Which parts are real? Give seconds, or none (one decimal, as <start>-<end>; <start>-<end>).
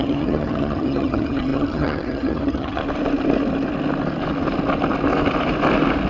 2.8-6.1